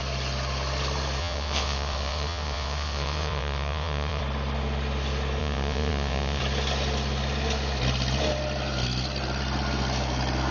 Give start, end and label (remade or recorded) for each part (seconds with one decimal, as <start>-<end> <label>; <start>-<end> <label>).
0.0-1.2 recorded; 1.2-4.2 remade; 4.2-5.4 recorded; 5.4-6.4 remade; 6.4-10.5 recorded